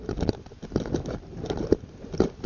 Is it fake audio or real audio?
real